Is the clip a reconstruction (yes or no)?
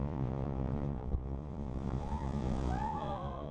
yes